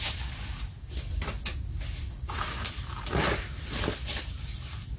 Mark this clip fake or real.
real